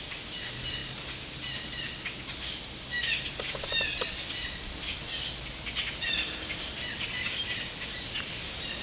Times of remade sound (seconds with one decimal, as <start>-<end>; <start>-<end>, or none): none